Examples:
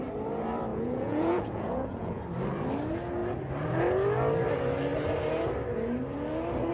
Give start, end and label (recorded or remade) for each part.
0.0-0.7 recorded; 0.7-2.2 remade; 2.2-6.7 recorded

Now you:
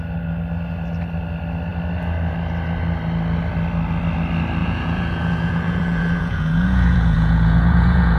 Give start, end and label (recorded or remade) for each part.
0.0-4.6 recorded; 4.6-8.2 remade

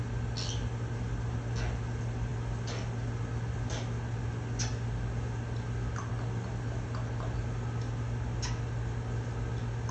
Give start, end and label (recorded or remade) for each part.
0.0-9.9 recorded

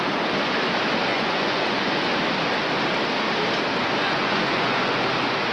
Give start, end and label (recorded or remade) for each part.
0.0-1.1 recorded; 1.1-2.1 remade; 2.1-4.0 recorded; 4.0-4.9 remade; 4.9-5.5 recorded